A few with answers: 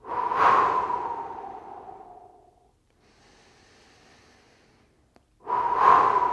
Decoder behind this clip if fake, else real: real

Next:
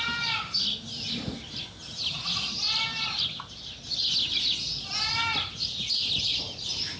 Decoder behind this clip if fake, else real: real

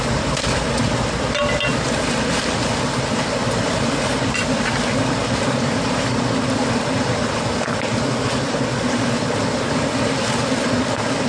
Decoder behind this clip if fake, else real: real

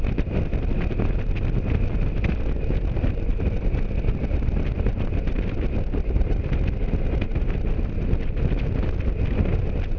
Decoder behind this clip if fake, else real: real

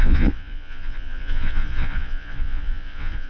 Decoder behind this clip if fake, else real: fake, vocoder, Vocos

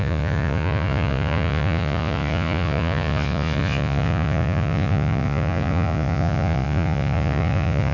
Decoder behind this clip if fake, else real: fake, vocoder, Vocos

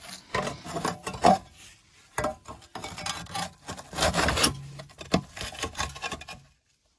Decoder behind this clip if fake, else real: real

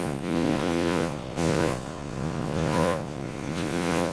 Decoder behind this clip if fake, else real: fake, vocoder, Vocos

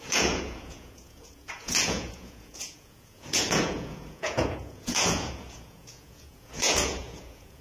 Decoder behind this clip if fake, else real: fake, vocoder, Vocos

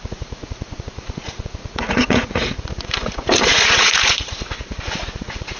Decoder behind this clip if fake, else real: fake, vocoder, Vocos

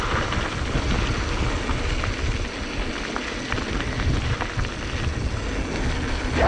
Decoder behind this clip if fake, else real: real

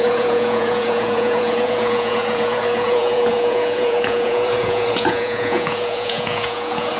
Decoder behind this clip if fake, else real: fake, vocoder, Vocos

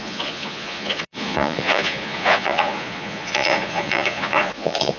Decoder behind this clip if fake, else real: fake, vocoder, Vocos